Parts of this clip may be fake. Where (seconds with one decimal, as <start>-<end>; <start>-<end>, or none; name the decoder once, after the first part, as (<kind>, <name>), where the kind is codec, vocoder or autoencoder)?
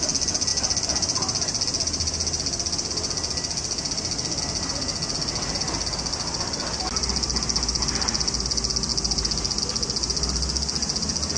none